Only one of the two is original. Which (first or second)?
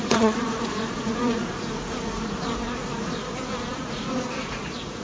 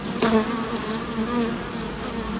second